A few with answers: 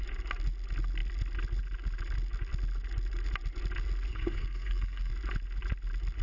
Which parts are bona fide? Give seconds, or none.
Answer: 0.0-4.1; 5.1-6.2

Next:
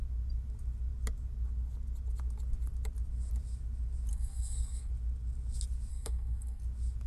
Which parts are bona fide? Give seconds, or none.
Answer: 0.0-4.1; 4.9-5.9; 6.6-7.1

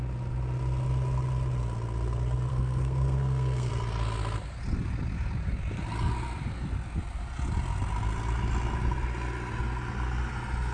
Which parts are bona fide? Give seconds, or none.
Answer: 0.0-2.5; 3.7-10.7